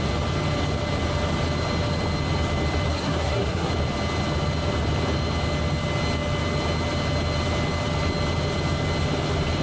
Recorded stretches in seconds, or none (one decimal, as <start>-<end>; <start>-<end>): 0.0-2.9; 3.7-9.6